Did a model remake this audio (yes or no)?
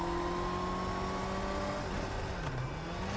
no